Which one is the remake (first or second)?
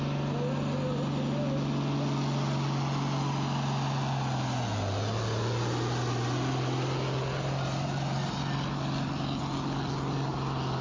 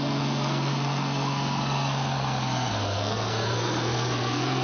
second